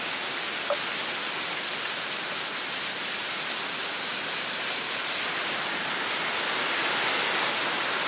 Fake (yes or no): no